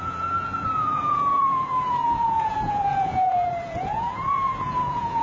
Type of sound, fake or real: fake